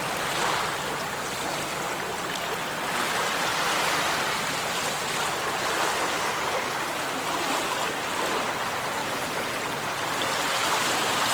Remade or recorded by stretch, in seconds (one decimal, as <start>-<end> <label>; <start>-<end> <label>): 0.0-9.0 recorded; 9.0-9.5 remade; 9.5-11.3 recorded